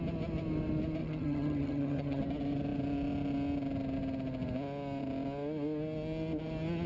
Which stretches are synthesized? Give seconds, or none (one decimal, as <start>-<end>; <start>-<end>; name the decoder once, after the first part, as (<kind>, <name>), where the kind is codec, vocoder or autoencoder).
1.0-2.2 (vocoder, HiFi-GAN)

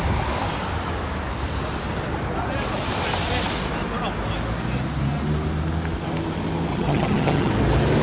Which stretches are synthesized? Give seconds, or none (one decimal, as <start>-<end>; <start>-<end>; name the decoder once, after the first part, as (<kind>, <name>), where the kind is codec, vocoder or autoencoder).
6.7-7.5 (vocoder, HiFi-GAN)

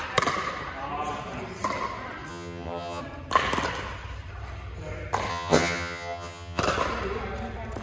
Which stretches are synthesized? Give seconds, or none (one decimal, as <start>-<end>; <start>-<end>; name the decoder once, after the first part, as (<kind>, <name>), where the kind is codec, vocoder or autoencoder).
2.3-3.0 (vocoder, HiFi-GAN); 5.3-6.6

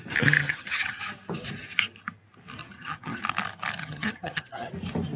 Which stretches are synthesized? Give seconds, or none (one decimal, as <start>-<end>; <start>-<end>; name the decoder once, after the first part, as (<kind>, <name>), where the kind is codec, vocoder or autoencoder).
0.4-1.0 (vocoder, HiFi-GAN); 2.6-3.2; 3.8-4.7

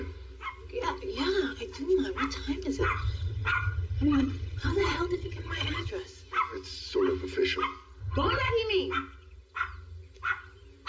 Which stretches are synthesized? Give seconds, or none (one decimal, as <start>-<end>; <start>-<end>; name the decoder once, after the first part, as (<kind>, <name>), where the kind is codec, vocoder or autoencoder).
2.8-5.9 (vocoder, HiFi-GAN); 8.0-8.5